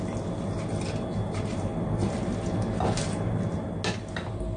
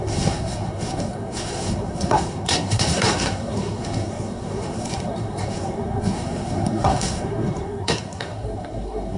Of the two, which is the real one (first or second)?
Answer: first